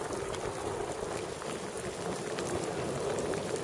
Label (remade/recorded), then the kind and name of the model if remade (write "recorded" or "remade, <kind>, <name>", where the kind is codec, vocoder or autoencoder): recorded